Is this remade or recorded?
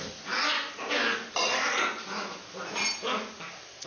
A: recorded